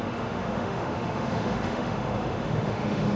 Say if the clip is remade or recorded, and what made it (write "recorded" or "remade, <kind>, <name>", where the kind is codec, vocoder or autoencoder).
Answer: remade, autoencoder, DAC-VAE